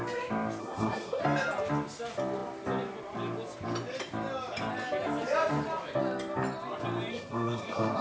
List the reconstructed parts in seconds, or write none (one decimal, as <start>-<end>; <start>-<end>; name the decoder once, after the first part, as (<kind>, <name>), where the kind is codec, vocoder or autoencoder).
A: 0.6-1.2 (codec, SNAC); 7.1-8.0